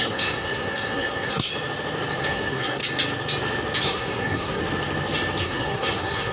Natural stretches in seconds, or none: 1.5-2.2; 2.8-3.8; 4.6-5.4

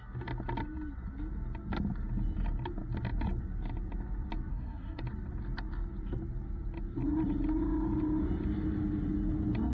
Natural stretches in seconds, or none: 0.0-4.5; 5.0-9.7

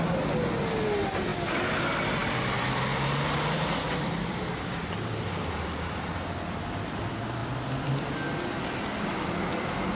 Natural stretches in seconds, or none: 0.0-9.9

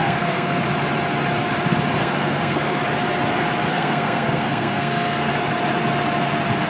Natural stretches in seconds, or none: 0.6-2.0; 2.8-3.7; 5.3-6.7

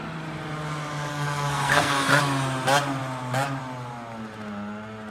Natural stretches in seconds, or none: 0.0-1.1; 2.2-5.1

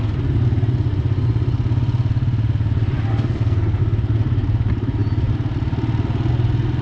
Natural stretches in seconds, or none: 0.0-3.1; 3.8-6.8

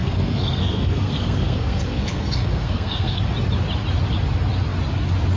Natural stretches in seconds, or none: 3.2-5.4

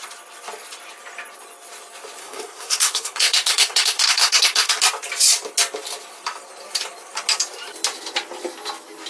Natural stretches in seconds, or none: 0.0-2.2; 4.7-9.1